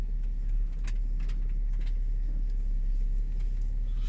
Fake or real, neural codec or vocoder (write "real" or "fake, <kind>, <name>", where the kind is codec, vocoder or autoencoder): real